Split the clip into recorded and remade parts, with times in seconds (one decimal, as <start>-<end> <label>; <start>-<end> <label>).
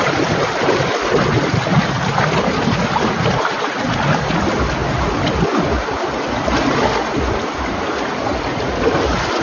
0.0-9.4 recorded